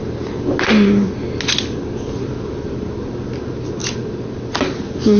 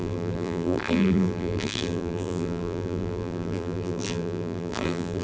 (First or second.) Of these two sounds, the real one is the first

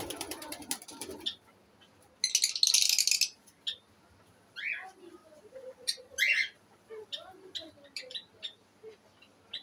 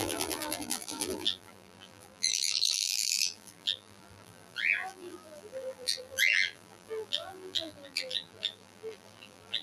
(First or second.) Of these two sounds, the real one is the first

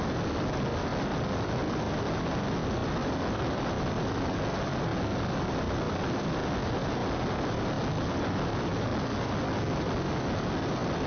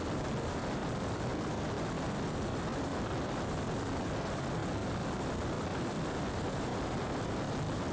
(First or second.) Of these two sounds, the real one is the first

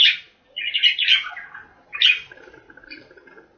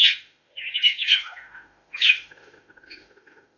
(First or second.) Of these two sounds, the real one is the first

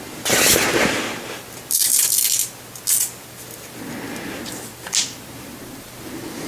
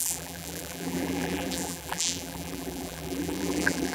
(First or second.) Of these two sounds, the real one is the first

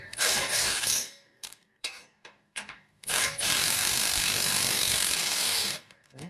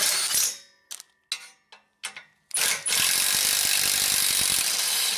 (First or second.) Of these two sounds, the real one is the second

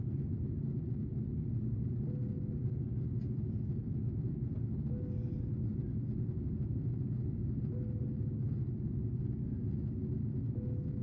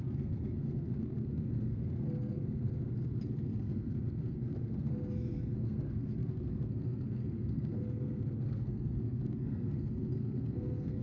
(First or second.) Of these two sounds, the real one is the first